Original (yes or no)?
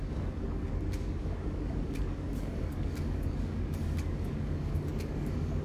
no